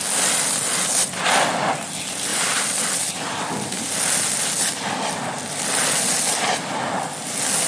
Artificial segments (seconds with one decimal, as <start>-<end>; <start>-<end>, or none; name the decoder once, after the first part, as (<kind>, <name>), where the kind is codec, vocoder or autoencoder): 2.3-3.9 (vocoder, BigVGAN v2)